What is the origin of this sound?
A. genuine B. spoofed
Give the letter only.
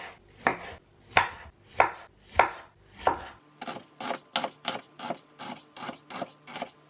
A